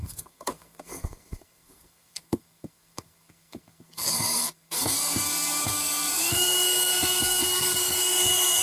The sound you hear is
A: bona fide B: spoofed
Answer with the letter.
B